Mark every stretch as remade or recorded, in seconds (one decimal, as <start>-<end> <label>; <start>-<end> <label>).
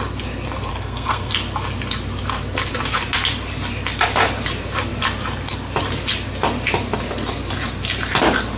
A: 0.0-0.7 recorded; 0.7-1.3 remade; 1.3-8.6 recorded